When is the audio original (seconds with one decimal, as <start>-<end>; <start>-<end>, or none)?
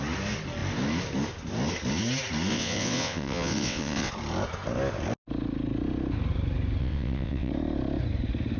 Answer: 0.0-2.5; 4.1-6.8; 7.5-8.6